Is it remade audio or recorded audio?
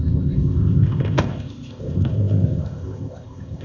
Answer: remade